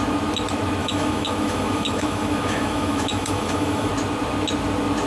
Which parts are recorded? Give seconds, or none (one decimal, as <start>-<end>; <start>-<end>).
0.0-0.8; 3.9-5.1